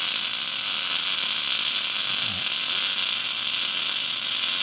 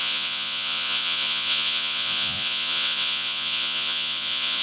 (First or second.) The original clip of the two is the first